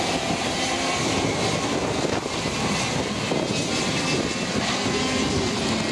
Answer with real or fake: real